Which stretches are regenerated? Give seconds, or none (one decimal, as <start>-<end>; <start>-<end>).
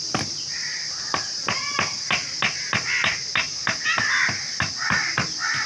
none